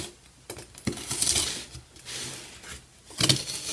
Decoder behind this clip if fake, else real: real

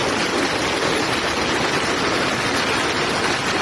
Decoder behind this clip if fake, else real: real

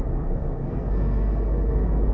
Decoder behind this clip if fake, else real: fake, codec, SNAC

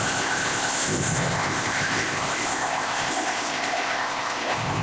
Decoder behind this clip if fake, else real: fake, codec, ZipCodec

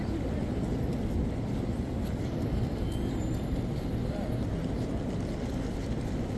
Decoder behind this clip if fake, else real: real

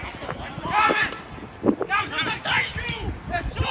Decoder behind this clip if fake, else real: real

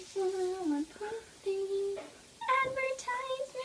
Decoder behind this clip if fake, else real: real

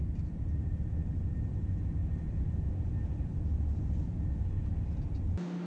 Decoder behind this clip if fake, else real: real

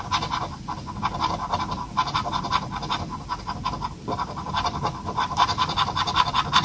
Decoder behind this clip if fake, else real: real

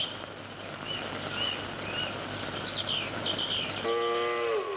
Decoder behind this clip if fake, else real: real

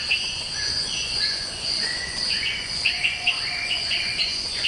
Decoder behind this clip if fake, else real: fake, vocoder, Vocos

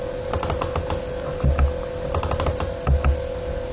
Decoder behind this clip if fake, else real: real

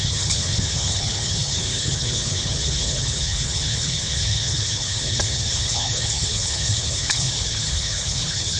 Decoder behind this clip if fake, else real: fake, codec, HILCodec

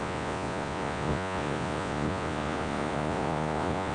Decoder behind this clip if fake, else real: fake, vocoder, Vocos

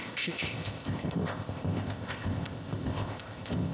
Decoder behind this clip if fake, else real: fake, codec, ZipCodec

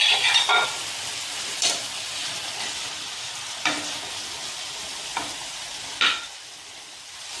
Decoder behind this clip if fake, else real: fake, vocoder, BigVGAN v2